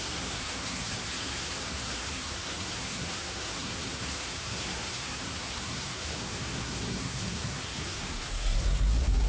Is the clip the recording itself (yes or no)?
no